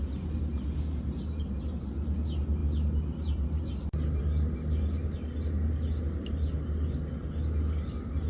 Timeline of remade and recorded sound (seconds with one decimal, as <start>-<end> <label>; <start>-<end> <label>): 0.0-8.3 recorded